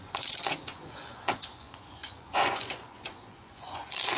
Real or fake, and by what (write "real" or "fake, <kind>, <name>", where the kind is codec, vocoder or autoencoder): fake, vocoder, Vocos